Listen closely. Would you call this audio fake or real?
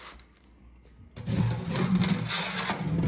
real